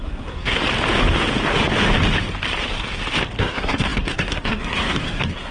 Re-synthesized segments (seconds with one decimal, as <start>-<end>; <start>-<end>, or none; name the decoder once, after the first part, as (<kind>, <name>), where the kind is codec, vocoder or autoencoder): 0.0-0.6 (codec, SNAC); 3.4-5.5

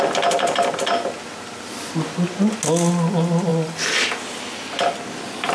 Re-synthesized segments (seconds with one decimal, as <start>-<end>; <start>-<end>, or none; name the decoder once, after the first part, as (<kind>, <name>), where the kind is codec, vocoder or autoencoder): 3.5-4.1 (vocoder, BigVGAN v2)

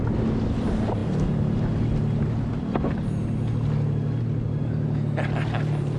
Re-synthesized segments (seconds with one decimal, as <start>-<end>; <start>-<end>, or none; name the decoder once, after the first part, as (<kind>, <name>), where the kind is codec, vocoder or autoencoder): none

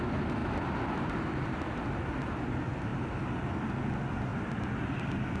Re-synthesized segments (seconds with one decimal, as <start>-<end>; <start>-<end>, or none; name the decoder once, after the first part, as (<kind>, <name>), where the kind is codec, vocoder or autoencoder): none

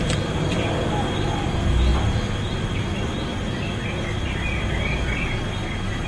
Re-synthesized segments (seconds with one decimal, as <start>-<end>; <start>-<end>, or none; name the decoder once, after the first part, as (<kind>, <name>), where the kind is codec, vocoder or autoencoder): none

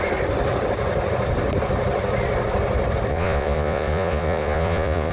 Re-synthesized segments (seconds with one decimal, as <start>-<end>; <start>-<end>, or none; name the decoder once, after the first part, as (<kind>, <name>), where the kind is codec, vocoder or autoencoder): 3.1-5.1 (vocoder, Vocos)

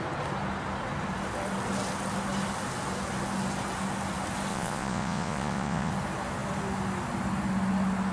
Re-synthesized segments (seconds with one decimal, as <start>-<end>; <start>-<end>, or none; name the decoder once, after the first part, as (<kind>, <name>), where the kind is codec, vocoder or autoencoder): 4.5-5.9 (vocoder, Vocos)

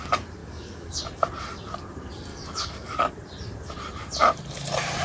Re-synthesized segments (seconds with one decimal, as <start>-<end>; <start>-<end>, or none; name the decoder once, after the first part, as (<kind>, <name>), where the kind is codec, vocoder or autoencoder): 0.4-1.0 (codec, DAC); 2.3-3.1